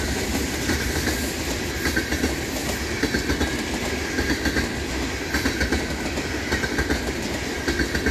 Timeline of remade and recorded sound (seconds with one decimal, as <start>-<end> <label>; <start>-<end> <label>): 0.0-2.6 remade; 2.6-5.2 recorded; 5.2-8.1 remade

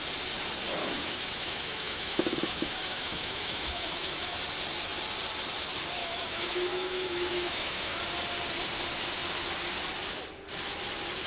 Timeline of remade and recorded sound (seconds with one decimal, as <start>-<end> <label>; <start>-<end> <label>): 0.0-0.8 recorded; 0.8-4.4 remade; 4.4-6.0 recorded; 6.0-8.0 remade; 8.0-11.3 recorded

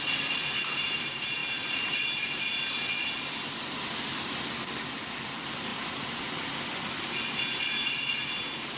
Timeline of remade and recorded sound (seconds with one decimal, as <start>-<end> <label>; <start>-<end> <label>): 0.0-5.7 recorded; 5.7-6.5 remade; 6.5-8.8 recorded

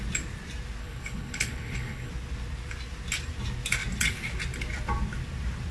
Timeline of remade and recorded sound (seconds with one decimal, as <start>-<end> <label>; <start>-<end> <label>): 0.0-0.8 recorded; 0.8-2.1 remade; 2.1-5.7 recorded

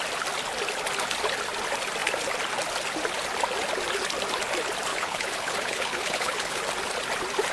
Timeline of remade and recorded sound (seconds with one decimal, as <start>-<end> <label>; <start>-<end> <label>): 0.0-4.9 recorded; 4.9-6.6 remade; 6.6-7.5 recorded

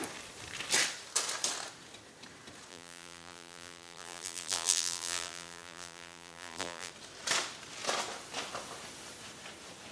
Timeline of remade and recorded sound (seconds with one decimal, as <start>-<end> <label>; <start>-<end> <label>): 0.0-2.7 recorded; 2.7-6.9 remade; 6.9-9.9 recorded

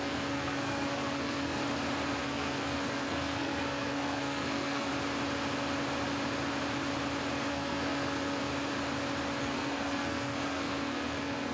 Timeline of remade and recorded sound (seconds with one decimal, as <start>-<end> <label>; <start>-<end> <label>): 0.0-1.6 remade; 1.6-2.2 recorded; 2.2-4.9 remade; 4.9-7.5 recorded; 7.5-8.5 remade; 8.5-9.4 recorded; 9.4-11.5 remade

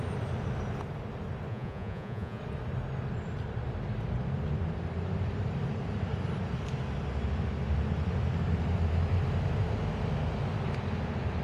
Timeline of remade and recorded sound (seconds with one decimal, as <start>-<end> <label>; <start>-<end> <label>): 0.0-1.5 recorded; 1.5-2.4 remade; 2.4-11.4 recorded